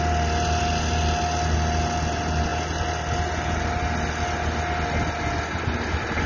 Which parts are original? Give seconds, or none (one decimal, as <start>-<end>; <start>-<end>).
0.0-6.3